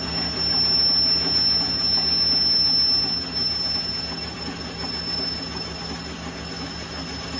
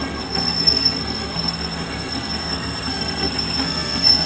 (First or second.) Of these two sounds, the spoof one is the second